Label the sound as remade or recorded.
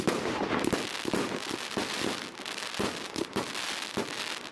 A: recorded